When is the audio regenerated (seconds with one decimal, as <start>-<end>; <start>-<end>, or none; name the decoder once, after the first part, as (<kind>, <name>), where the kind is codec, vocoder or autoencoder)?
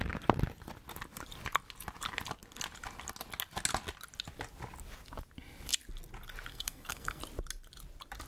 6.5-7.2 (codec, SNAC)